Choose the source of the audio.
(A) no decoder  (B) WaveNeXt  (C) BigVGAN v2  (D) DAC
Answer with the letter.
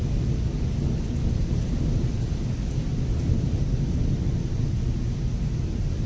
A